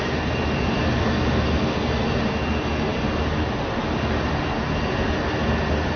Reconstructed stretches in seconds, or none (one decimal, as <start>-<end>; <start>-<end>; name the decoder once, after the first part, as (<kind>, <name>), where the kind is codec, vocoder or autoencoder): none